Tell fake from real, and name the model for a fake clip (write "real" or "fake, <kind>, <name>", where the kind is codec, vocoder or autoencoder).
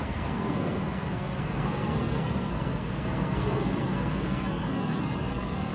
fake, codec, SNAC